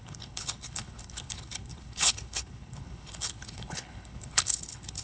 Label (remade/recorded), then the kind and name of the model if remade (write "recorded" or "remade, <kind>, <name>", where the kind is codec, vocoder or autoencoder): remade, codec, HILCodec